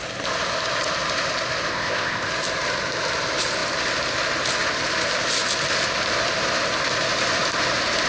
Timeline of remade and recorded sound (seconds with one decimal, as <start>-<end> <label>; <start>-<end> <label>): 0.0-1.7 recorded; 1.7-2.3 remade; 2.3-8.1 recorded